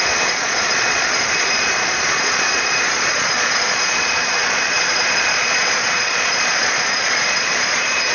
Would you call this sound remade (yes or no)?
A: yes